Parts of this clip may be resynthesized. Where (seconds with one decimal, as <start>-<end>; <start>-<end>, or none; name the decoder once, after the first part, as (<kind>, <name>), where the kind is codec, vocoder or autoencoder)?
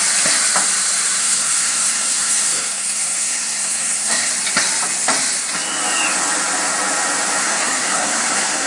1.2-4.3 (codec, SNAC); 7.4-8.7